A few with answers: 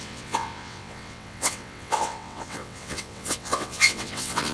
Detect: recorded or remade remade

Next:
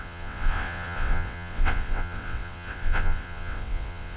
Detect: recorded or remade remade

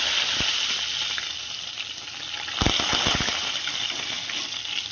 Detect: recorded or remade recorded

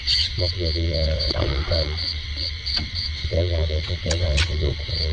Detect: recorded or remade remade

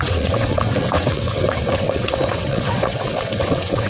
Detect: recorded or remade remade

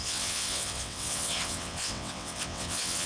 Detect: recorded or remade remade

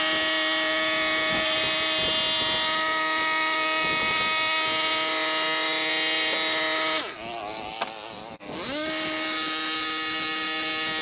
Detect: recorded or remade recorded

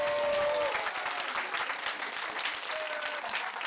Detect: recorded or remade recorded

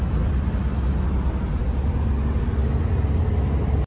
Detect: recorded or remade recorded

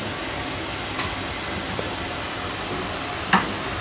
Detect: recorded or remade recorded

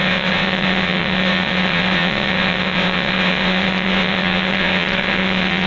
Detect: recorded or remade remade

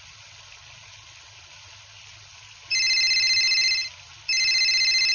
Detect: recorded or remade recorded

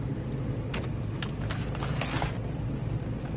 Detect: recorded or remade recorded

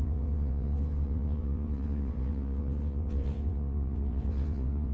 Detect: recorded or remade remade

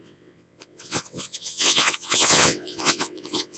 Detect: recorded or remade remade